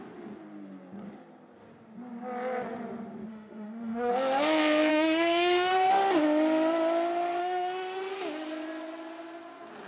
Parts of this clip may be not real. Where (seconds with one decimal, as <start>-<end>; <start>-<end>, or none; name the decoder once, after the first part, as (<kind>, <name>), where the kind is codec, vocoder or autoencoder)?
3.3-4.1 (autoencoder, DAC-VAE); 4.9-5.9; 7.4-8.1